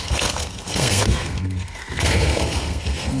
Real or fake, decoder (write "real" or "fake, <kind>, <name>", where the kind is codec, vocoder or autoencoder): fake, codec, SNAC